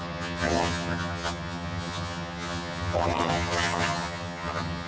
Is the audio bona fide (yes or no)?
no